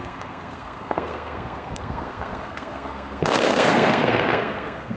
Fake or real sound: fake